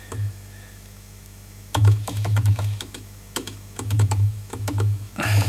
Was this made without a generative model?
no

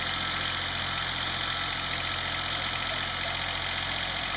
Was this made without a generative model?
yes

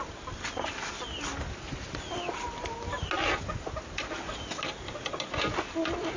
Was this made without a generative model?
yes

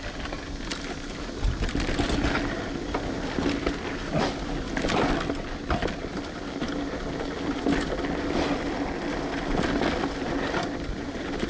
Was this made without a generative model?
yes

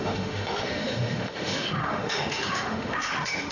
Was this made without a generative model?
no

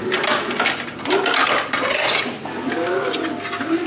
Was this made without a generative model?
yes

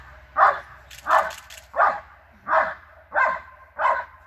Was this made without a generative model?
yes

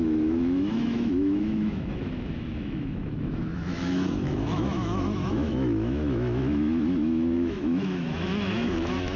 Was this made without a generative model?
no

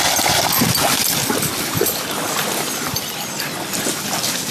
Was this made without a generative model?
yes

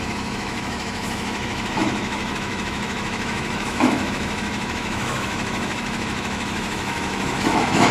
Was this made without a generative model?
no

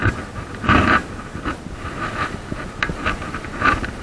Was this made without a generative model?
yes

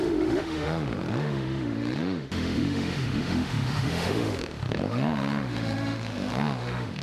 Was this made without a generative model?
no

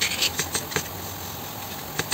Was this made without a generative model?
yes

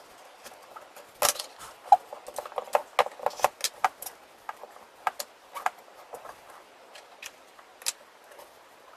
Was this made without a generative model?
yes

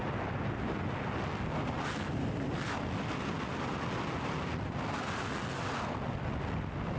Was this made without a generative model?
yes